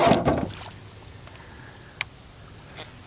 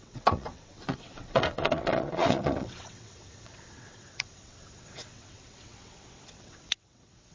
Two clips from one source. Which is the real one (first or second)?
first